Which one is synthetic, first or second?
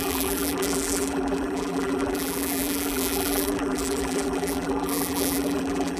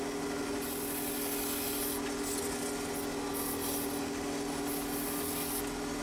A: first